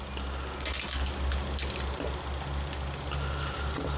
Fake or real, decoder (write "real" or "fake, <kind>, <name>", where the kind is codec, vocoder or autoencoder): real